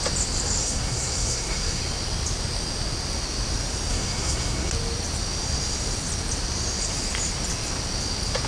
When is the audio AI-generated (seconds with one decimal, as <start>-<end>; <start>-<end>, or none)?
0.6-1.8; 3.9-4.7